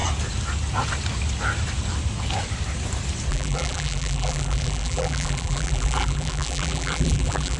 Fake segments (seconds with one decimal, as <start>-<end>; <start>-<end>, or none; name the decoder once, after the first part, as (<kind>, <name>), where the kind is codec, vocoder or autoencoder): 3.3-7.6 (vocoder, BigVGAN v2)